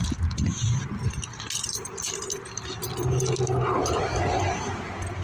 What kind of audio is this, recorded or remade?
recorded